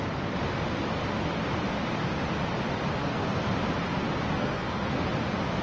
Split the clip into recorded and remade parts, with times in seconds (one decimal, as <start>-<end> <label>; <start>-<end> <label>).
0.0-3.0 recorded; 3.0-3.5 remade; 3.5-4.4 recorded; 4.4-5.1 remade; 5.1-5.6 recorded